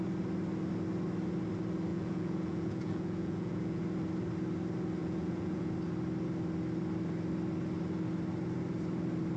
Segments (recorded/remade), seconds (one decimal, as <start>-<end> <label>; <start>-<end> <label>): 0.0-1.9 recorded; 1.9-3.8 remade; 3.8-5.0 recorded; 5.0-5.7 remade; 5.7-9.4 recorded